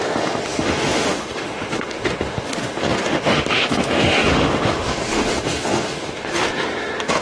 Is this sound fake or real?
fake